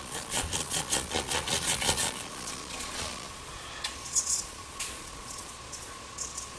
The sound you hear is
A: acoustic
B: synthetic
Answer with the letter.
B